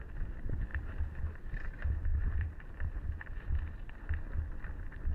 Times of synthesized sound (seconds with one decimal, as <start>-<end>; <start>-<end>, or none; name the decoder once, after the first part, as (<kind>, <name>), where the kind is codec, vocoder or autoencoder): 0.7-1.2 (vocoder, BigVGAN v2); 2.1-4.5